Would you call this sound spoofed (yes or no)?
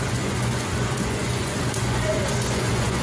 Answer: yes